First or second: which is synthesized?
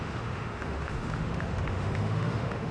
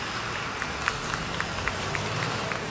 first